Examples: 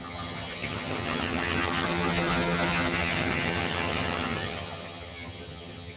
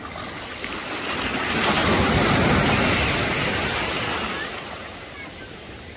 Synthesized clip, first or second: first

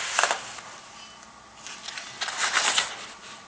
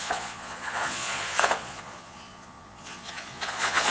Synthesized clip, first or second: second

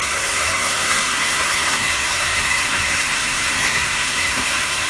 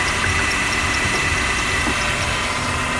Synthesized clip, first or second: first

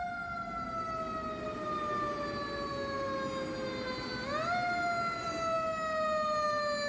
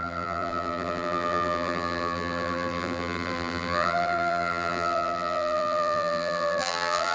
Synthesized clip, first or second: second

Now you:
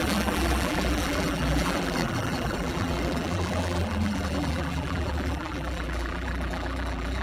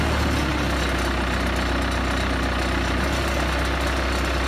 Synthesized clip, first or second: first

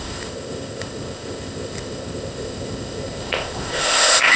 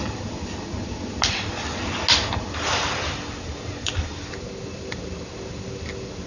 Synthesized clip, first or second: first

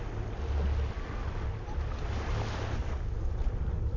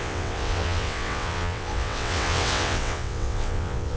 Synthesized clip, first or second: second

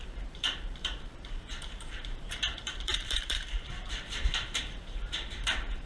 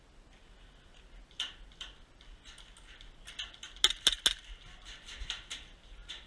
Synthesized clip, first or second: first